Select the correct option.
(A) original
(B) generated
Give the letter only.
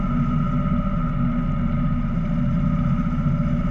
A